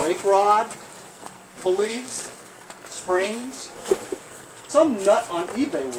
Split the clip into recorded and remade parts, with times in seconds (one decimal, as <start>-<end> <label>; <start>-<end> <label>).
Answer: 0.0-1.1 recorded; 1.1-4.7 remade; 4.7-6.0 recorded